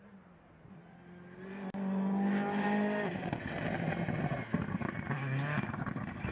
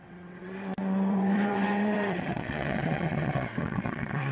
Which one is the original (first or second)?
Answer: first